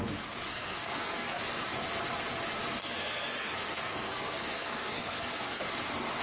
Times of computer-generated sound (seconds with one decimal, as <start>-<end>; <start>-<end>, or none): 0.5-1.4; 2.8-5.6